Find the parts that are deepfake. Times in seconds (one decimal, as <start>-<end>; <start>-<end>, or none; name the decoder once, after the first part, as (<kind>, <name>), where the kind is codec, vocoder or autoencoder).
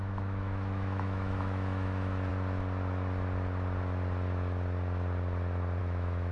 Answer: 0.0-2.3 (autoencoder, DAC-VAE); 5.8-6.3